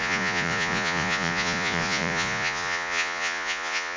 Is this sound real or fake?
fake